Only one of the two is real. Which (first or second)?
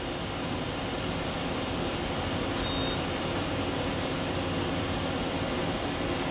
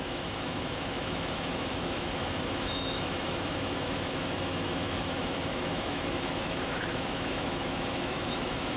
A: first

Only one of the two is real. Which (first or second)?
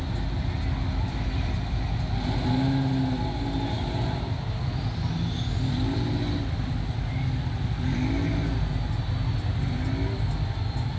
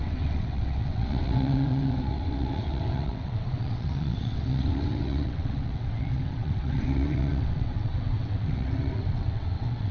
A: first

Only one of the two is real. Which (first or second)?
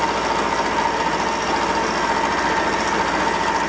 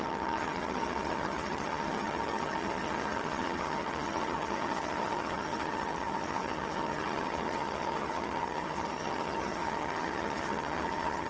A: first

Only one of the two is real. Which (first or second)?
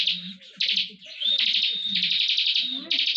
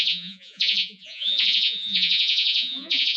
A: first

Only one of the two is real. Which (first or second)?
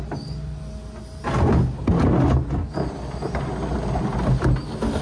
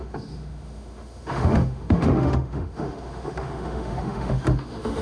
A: first